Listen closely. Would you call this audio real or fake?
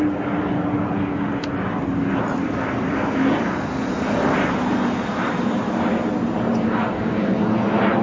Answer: real